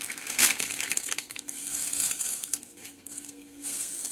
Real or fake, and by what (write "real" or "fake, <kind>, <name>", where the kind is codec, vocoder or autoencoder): fake, codec, SNAC